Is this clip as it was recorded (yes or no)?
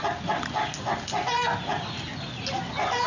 yes